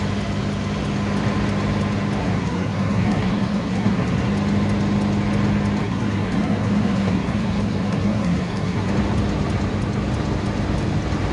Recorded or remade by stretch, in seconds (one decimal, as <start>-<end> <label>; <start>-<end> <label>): 0.0-2.2 recorded; 2.2-4.3 remade; 4.3-5.8 recorded; 5.8-8.9 remade; 8.9-11.3 recorded